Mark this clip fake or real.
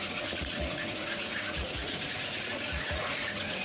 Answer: fake